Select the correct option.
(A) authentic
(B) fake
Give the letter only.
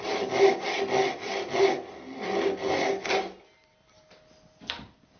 A